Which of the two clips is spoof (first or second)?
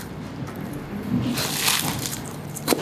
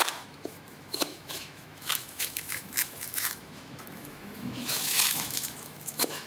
second